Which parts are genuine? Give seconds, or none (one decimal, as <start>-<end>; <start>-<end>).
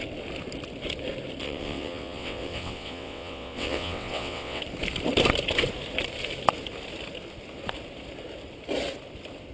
0.0-1.4; 4.6-9.5